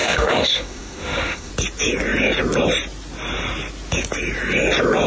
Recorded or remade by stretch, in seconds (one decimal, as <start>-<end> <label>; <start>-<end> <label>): 0.0-1.5 remade; 1.5-5.1 recorded